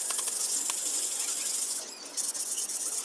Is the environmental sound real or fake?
fake